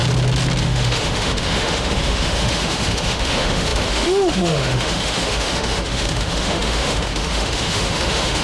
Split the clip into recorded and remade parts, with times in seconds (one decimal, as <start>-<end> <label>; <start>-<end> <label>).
0.0-0.6 recorded; 0.6-8.4 remade